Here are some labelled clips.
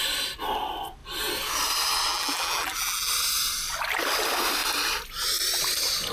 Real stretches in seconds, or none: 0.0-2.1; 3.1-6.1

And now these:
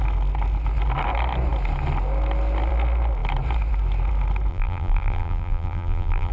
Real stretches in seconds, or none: 0.0-4.5

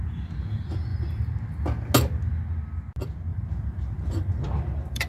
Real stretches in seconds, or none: 0.0-0.9; 1.4-3.3

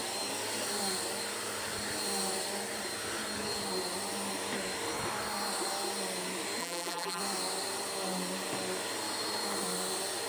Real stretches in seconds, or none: 0.0-6.6; 7.2-10.3

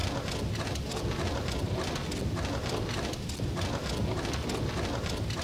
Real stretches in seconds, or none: 0.0-5.4

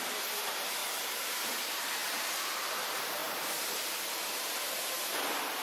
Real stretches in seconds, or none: 0.8-1.6